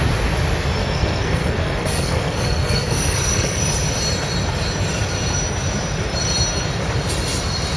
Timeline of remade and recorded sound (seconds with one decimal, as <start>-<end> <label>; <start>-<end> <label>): 0.0-0.8 recorded; 0.8-3.6 remade; 3.6-7.8 recorded